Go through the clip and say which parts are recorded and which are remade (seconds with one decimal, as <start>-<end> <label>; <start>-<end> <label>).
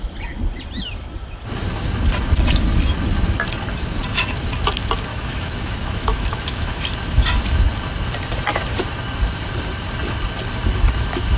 0.0-5.1 recorded; 5.1-6.8 remade; 6.8-11.4 recorded